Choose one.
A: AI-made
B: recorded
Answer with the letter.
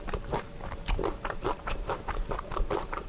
A